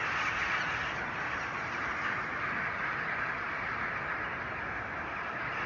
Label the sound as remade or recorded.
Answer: recorded